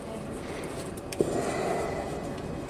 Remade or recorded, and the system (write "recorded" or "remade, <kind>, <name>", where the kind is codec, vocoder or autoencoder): recorded